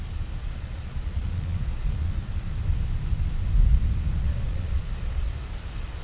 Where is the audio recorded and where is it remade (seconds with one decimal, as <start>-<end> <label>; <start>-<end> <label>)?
0.0-0.4 recorded; 0.4-2.3 remade; 2.3-4.1 recorded; 4.1-5.3 remade; 5.3-6.0 recorded